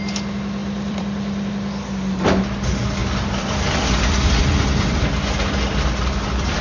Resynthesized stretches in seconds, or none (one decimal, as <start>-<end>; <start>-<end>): 0.6-1.5; 3.0-4.4